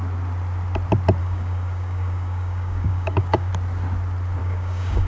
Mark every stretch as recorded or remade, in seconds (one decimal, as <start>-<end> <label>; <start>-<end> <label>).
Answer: 0.0-1.2 recorded; 1.2-3.5 remade; 3.5-4.4 recorded; 4.4-5.1 remade